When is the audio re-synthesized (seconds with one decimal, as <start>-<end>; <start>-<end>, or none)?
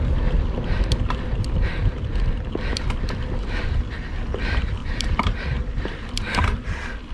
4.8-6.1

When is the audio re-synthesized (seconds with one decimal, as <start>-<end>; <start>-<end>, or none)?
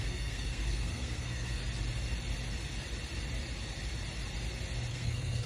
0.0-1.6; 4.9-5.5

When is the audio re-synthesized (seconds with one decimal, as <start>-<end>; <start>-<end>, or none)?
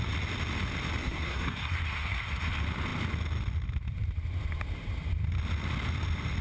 1.0-2.5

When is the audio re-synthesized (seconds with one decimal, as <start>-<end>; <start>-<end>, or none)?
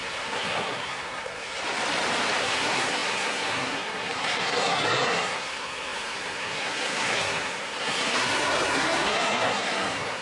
0.0-1.6; 2.4-10.2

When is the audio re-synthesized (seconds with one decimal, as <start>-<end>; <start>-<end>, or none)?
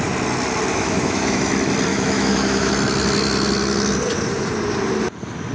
0.7-1.5; 1.9-2.7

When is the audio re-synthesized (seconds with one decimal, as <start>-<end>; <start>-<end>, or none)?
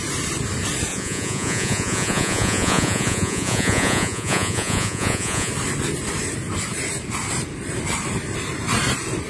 0.9-5.5